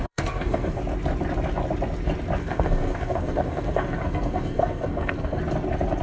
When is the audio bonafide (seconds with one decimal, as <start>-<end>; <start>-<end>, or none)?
0.8-2.4; 5.4-6.0